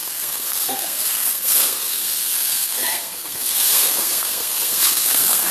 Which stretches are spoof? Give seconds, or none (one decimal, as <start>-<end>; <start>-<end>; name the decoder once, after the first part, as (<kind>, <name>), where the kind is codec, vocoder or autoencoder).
0.0-5.5 (codec, SNAC)